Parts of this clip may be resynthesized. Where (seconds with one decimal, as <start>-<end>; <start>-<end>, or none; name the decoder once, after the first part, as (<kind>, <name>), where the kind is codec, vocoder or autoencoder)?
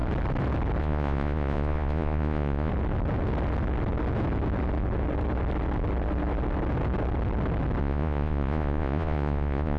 0.8-2.7 (vocoder, Vocos); 7.8-9.8